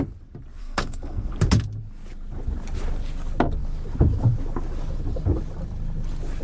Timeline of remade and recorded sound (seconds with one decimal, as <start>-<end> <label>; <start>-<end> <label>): 0.0-0.6 recorded; 0.6-1.3 remade; 1.3-6.4 recorded